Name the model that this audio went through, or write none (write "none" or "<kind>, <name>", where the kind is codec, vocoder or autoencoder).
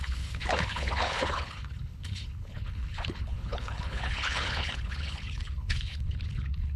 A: codec, HILCodec